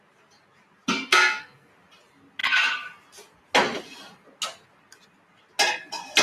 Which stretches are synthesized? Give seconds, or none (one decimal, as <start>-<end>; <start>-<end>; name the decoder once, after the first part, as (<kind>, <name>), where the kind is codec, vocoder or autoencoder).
1.1-1.7 (codec, SNAC)